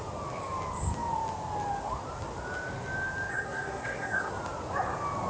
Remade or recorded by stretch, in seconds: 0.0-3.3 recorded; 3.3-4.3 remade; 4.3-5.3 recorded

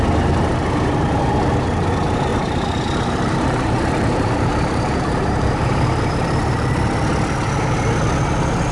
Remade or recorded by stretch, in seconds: 0.0-2.3 recorded; 2.3-6.1 remade; 6.1-8.7 recorded

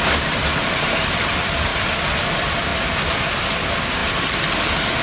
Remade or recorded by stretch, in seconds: 0.0-1.7 remade; 1.7-2.3 recorded; 2.3-2.7 remade; 2.7-3.5 recorded; 3.5-5.0 remade

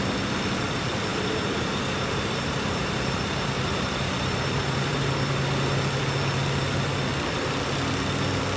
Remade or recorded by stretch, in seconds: 0.0-1.1 recorded; 1.1-5.0 remade; 5.0-8.6 recorded

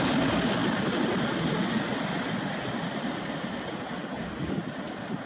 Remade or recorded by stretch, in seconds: 0.0-5.3 recorded

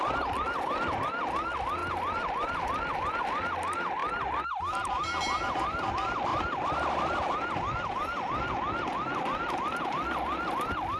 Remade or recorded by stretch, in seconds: 0.0-11.0 recorded

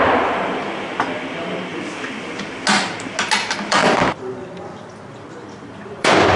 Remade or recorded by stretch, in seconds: 0.0-3.8 recorded; 3.8-6.4 remade

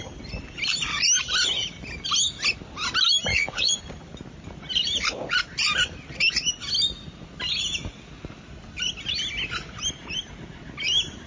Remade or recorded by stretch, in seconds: 0.0-3.3 recorded; 3.3-3.8 remade; 3.8-11.3 recorded